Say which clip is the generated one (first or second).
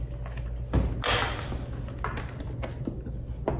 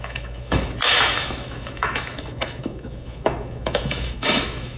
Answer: second